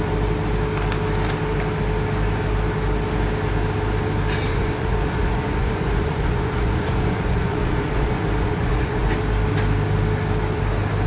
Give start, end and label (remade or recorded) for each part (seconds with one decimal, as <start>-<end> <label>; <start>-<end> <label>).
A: 0.0-4.5 recorded; 4.5-9.1 remade; 9.1-11.1 recorded